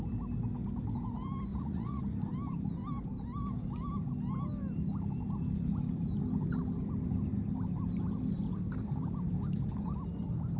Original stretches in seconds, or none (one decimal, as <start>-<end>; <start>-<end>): 0.0-1.5; 2.0-10.6